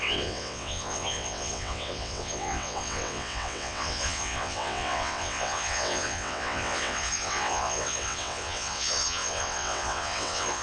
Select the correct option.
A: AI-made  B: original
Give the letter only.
A